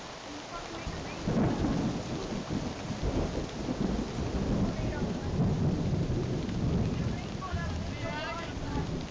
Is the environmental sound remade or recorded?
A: recorded